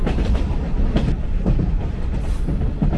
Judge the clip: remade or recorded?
recorded